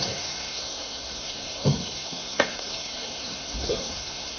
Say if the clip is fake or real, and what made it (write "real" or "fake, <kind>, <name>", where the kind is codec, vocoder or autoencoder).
fake, codec, SNAC